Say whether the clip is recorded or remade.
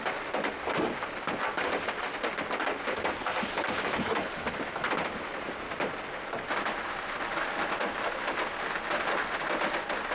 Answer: recorded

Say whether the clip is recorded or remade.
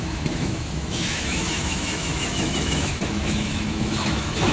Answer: remade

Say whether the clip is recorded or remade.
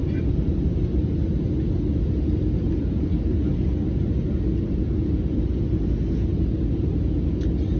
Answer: recorded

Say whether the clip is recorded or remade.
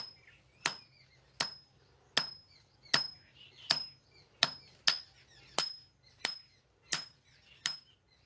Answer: recorded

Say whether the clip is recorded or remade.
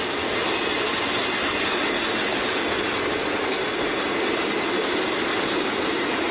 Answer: recorded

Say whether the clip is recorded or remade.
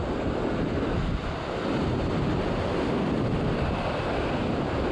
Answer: recorded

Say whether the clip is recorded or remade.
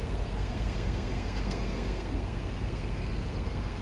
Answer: remade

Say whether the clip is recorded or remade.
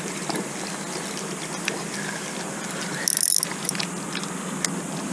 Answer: recorded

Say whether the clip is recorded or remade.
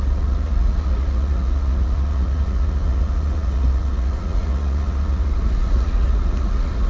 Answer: remade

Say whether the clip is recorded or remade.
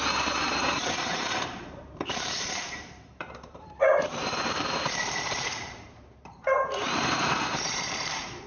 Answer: remade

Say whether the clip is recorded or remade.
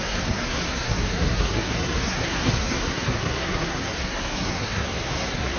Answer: remade